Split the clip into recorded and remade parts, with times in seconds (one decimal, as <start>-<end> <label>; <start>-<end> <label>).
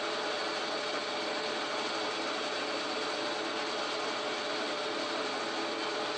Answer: 0.0-6.2 recorded